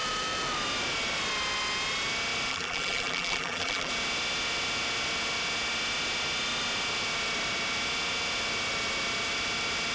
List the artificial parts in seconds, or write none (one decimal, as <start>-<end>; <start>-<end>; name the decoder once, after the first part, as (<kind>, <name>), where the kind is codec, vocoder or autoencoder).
2.5-3.9 (vocoder, BigVGAN v2)